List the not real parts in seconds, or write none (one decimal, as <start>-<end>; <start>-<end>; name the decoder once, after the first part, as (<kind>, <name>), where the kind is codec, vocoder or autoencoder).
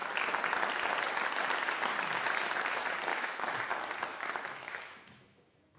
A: 3.1-3.6 (autoencoder, DAC-VAE); 4.1-5.8